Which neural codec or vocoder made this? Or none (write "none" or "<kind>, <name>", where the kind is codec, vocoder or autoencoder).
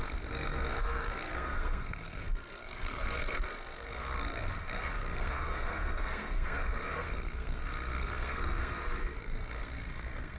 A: codec, SNAC